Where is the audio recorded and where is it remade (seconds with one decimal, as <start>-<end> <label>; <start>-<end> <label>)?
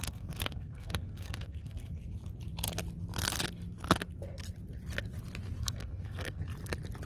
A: 0.0-2.0 remade; 2.0-5.6 recorded; 5.6-6.4 remade; 6.4-7.1 recorded